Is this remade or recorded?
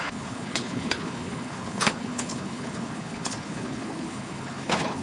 remade